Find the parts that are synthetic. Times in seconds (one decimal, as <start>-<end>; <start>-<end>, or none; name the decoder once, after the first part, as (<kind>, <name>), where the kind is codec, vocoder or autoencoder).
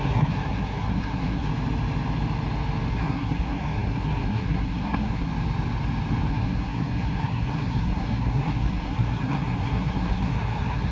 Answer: 0.0-1.5 (codec, SNAC); 2.9-5.3; 6.3-10.9